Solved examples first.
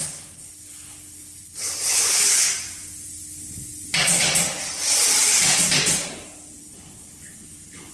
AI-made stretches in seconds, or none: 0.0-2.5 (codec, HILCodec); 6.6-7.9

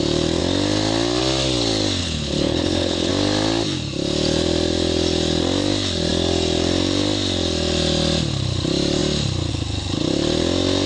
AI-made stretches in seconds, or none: 2.0-3.1 (codec, HILCodec)

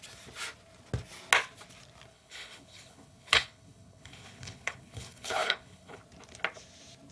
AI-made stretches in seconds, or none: 2.1-6.0 (codec, HILCodec)

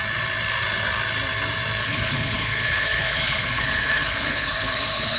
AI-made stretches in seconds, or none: 1.8-5.2 (codec, HILCodec)